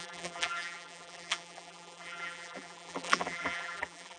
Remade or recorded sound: remade